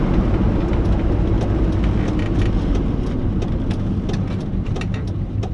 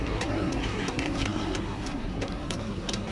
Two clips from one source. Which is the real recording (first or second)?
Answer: first